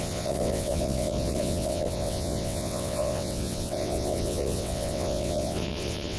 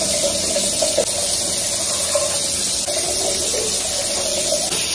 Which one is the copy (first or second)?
first